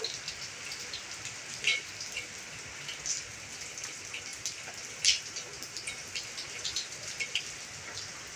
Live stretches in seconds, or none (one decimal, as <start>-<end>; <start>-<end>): 0.0-8.4